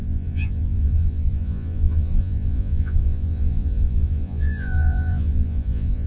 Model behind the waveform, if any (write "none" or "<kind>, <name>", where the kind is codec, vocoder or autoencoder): vocoder, Vocos